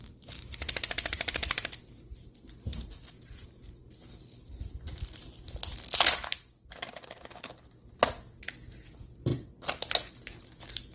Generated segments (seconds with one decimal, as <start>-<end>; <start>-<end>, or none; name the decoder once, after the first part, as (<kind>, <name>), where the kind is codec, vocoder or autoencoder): 2.7-3.8 (vocoder, Vocos)